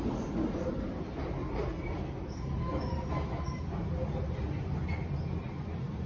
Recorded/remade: recorded